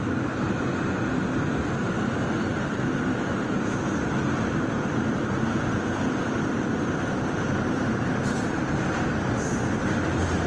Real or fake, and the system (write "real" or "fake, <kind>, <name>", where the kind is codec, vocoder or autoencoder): real